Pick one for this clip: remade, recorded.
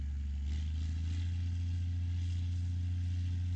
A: recorded